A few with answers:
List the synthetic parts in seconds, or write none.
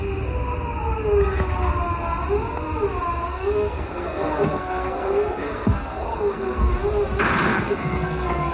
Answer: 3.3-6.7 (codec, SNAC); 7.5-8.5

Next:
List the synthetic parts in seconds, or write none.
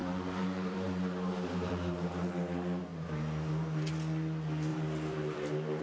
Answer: 0.0-2.3 (vocoder, BigVGAN v2); 2.9-3.9; 4.7-5.8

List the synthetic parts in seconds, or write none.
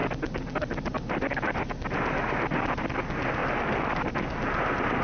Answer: none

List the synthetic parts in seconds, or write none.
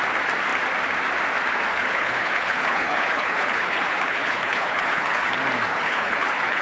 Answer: 1.7-5.3 (codec, HILCodec); 5.7-6.6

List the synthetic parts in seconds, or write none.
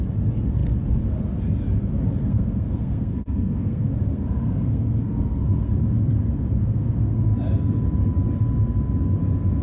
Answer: 2.2-5.7 (codec, SNAC); 6.6-7.3